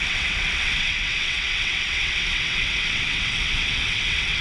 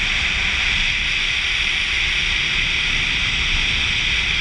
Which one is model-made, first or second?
first